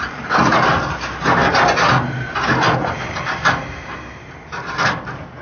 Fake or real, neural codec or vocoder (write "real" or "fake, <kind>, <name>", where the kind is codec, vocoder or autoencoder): real